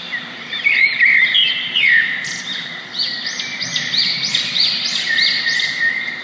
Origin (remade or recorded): remade